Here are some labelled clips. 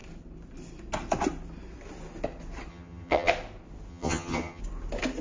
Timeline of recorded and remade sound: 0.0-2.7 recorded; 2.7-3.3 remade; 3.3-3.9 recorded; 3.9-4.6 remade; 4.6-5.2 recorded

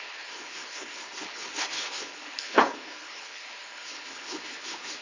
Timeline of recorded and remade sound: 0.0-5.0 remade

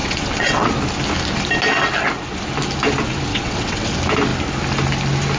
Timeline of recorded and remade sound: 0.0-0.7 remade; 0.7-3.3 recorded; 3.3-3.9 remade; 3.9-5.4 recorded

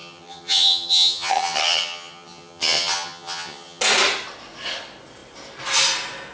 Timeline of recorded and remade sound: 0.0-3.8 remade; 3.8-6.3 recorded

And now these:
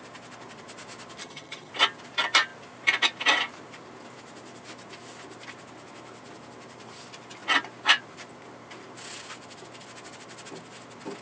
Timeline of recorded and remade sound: 0.0-1.2 recorded; 1.2-1.7 remade; 1.7-11.2 recorded

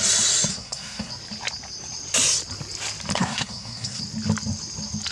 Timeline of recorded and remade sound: 0.0-0.5 recorded; 0.5-1.1 remade; 1.1-3.1 recorded; 3.1-4.0 remade; 4.0-5.1 recorded